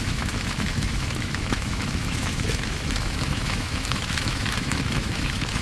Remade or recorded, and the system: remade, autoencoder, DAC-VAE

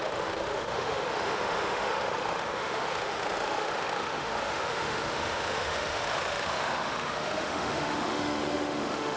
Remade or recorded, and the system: remade, autoencoder, DAC-VAE